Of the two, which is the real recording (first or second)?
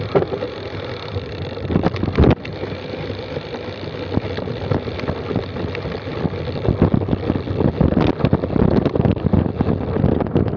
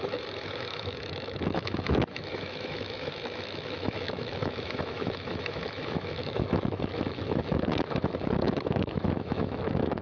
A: first